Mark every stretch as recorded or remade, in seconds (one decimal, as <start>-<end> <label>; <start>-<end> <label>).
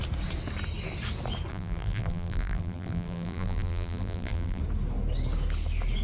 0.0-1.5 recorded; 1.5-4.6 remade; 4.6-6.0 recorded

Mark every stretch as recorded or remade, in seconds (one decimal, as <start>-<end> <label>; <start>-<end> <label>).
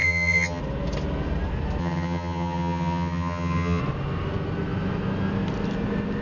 0.0-0.6 remade; 0.6-1.8 recorded; 1.8-3.8 remade; 3.8-6.2 recorded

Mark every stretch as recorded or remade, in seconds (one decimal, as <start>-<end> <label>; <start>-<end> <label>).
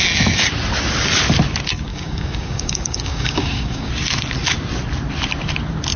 0.0-1.9 recorded; 1.9-3.9 remade; 3.9-6.0 recorded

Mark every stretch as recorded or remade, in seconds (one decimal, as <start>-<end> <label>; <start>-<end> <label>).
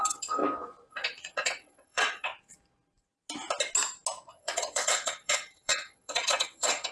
0.0-0.4 remade; 0.4-0.9 recorded; 0.9-2.3 remade; 2.3-4.3 recorded; 4.3-6.9 remade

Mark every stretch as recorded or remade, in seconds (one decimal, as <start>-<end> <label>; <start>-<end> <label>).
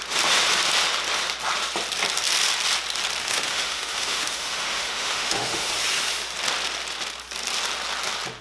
0.0-3.2 recorded; 3.2-5.7 remade; 5.7-8.4 recorded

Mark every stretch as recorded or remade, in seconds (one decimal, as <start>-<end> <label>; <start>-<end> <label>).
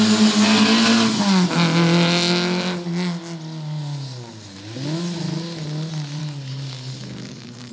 0.0-6.2 recorded; 6.2-7.7 remade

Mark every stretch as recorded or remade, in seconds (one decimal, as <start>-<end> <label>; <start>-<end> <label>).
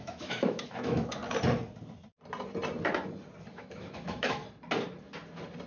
0.0-1.2 remade; 1.2-3.5 recorded; 3.5-4.4 remade; 4.4-5.7 recorded